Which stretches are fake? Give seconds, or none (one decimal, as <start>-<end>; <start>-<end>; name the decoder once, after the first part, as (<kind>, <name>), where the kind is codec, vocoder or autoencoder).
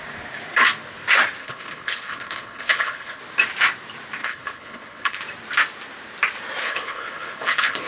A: 1.4-3.2 (codec, HILCodec); 4.2-5.2; 6.6-7.9